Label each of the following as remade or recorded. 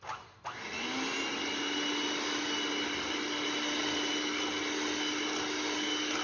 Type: recorded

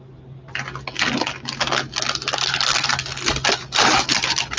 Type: recorded